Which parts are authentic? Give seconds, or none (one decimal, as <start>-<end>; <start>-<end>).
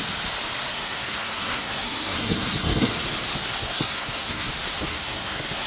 0.0-0.7; 2.9-3.6; 4.5-4.9